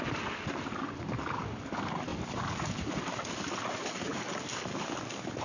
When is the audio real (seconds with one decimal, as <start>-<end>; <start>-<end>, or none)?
0.0-5.4